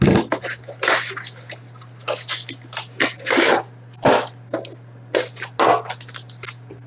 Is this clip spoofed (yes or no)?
no